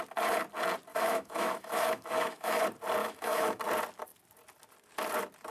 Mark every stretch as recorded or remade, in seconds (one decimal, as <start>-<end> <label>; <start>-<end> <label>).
0.0-0.9 recorded; 0.9-2.6 remade; 2.6-3.0 recorded; 3.0-3.6 remade; 3.6-5.5 recorded